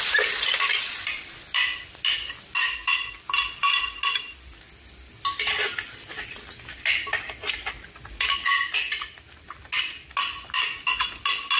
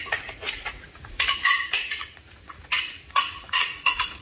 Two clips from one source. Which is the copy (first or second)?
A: second